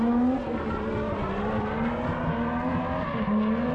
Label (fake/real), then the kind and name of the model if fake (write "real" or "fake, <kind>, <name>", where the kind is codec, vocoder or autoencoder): real